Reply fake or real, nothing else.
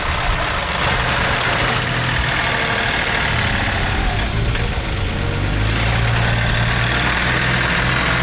real